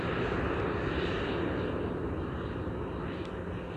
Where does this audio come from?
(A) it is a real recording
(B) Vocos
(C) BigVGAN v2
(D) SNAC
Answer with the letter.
A